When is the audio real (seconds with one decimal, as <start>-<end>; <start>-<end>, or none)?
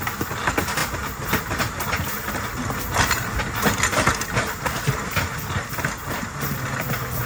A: 0.0-7.3